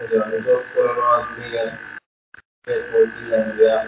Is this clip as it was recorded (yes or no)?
yes